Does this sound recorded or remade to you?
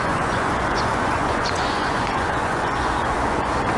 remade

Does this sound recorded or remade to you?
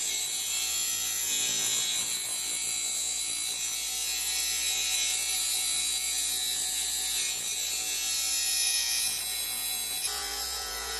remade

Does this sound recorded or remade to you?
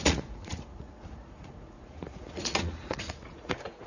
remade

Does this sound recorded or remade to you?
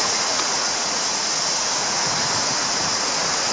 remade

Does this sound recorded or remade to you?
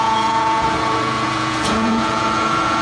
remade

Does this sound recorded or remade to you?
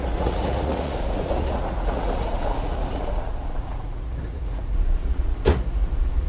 remade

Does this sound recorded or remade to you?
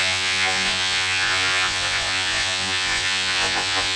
remade